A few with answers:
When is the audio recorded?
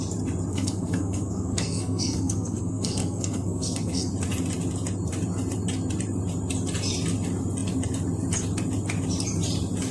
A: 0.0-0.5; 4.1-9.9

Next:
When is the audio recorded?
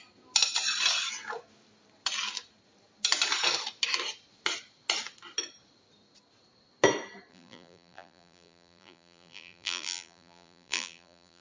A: 0.0-7.3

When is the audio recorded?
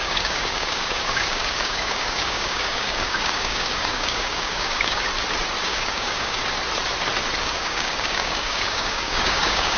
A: 5.1-5.6; 6.4-7.4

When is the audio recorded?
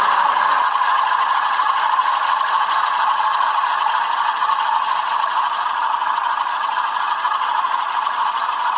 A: none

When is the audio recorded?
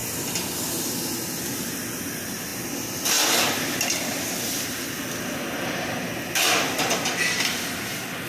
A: 0.0-8.3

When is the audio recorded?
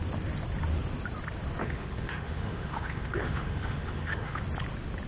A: 0.0-1.6; 4.4-5.1